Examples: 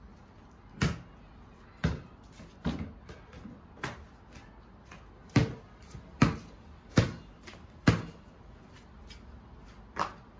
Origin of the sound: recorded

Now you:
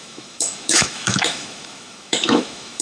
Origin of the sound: remade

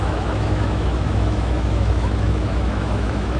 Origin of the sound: remade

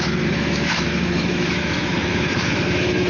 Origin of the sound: remade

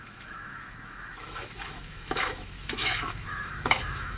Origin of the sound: remade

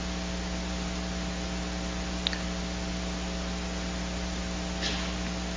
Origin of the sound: recorded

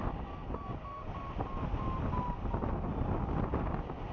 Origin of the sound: recorded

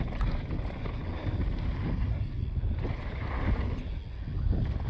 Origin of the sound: recorded